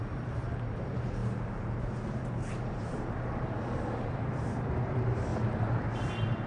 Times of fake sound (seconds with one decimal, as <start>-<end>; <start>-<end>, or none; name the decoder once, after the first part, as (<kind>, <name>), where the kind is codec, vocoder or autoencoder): 0.0-5.3 (vocoder, BigVGAN v2); 5.9-6.5